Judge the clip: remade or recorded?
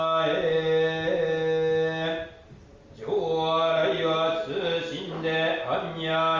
recorded